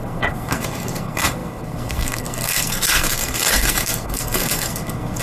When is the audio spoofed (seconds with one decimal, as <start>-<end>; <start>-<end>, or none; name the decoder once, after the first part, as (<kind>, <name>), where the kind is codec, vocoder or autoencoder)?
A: 0.0-5.2 (codec, SNAC)